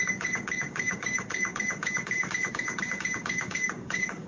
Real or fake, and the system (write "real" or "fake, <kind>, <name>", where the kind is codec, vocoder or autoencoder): fake, codec, DAC